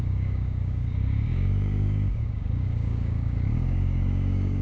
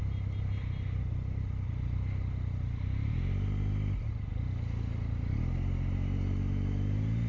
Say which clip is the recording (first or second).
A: second